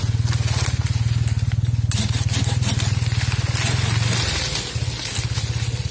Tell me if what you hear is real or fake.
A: real